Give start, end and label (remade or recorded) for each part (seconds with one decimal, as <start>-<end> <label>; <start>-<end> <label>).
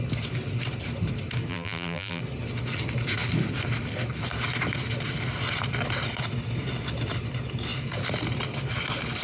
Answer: 0.0-1.5 recorded; 1.5-2.2 remade; 2.2-9.2 recorded